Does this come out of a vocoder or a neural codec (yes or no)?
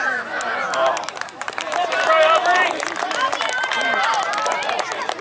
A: yes